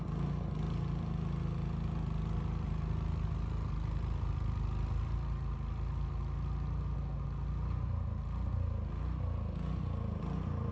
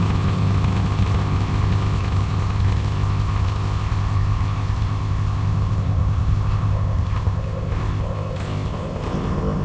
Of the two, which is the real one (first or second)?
first